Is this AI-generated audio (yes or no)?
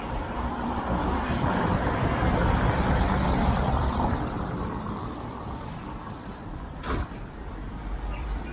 yes